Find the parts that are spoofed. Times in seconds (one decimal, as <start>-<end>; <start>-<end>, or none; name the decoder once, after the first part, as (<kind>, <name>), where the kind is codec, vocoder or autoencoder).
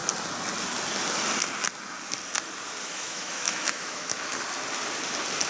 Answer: 2.8-4.3 (autoencoder, DAC-VAE)